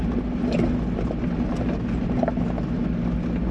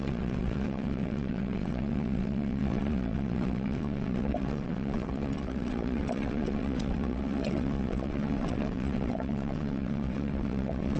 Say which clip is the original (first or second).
first